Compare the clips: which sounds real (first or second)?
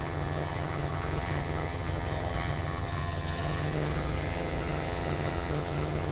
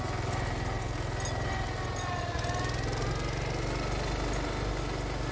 second